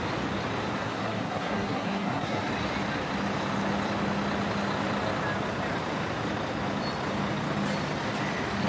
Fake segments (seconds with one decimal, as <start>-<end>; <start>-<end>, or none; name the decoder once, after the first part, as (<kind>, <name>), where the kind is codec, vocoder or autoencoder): 0.8-2.5 (codec, SNAC)